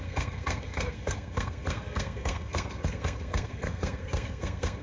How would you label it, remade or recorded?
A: remade